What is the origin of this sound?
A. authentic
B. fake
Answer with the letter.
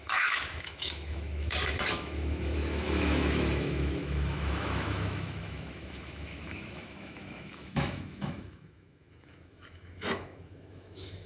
B